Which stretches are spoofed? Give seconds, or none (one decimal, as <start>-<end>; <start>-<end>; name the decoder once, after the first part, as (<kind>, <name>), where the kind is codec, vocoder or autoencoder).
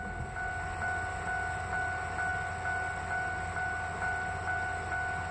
none